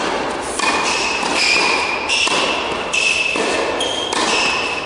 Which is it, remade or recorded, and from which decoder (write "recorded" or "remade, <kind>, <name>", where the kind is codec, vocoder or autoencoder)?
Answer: recorded